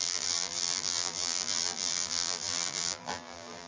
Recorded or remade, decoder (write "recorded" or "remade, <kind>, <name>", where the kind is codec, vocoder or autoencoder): remade, vocoder, BigVGAN v2